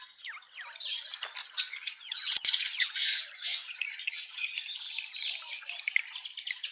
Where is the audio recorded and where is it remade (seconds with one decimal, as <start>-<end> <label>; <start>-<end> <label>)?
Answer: 0.0-1.4 recorded; 1.4-4.4 remade; 4.4-6.7 recorded